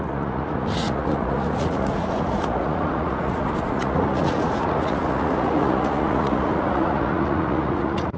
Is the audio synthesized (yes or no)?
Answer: yes